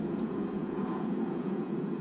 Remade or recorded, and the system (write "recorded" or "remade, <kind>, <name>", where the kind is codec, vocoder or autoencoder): remade, vocoder, Vocos